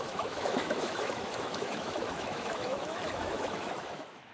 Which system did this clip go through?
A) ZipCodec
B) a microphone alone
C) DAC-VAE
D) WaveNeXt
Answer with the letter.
C